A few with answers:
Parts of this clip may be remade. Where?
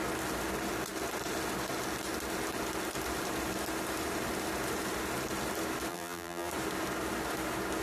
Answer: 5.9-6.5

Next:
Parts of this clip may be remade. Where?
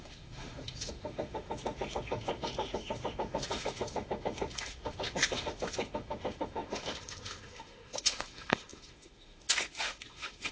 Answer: 0.0-10.5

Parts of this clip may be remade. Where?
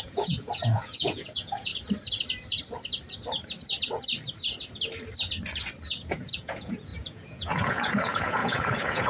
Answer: 0.0-1.7; 5.9-9.1